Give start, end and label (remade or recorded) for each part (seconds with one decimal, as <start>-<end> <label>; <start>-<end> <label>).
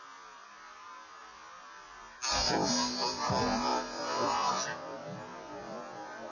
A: 0.0-6.3 recorded